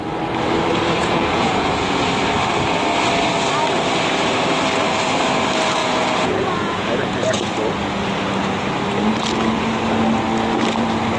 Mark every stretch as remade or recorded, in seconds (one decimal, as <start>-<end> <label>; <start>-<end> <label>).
0.0-1.0 recorded; 1.0-2.0 remade; 2.0-5.8 recorded; 5.8-7.5 remade; 7.5-11.2 recorded